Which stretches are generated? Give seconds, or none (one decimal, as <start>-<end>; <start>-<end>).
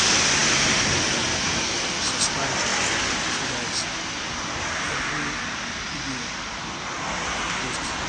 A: none